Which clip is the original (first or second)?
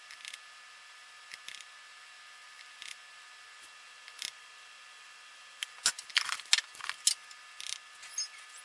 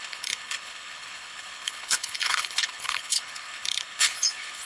first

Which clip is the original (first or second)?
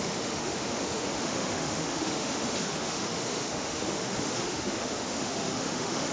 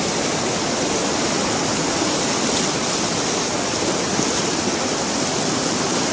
second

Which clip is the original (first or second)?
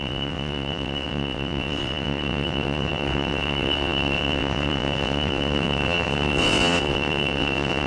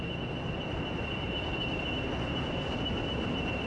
second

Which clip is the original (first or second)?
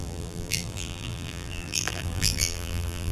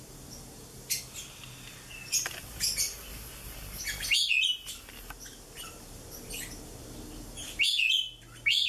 second